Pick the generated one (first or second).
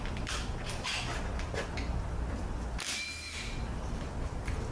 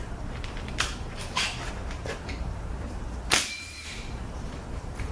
second